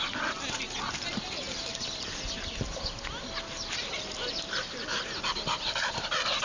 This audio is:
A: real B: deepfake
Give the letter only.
A